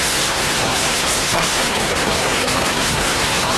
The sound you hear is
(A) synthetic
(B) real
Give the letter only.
A